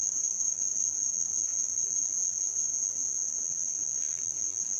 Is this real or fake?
fake